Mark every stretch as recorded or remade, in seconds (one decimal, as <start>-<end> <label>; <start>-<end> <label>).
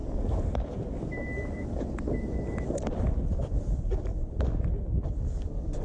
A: 0.0-3.5 remade; 3.5-4.1 recorded; 4.1-4.8 remade; 4.8-5.8 recorded